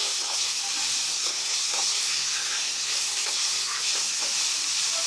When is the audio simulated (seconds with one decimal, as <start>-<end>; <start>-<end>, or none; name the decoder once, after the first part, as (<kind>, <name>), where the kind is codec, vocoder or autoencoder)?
0.0-0.6 (codec, SNAC); 1.1-4.2